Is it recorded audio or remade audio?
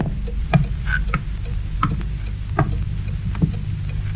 recorded